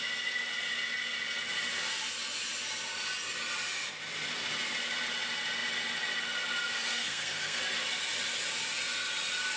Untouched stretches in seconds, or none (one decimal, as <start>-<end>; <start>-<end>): 0.0-6.9; 7.6-9.6